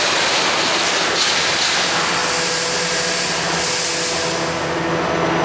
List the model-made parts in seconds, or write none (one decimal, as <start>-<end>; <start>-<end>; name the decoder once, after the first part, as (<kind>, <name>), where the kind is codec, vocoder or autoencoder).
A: none